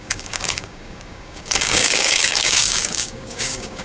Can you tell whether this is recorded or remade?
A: remade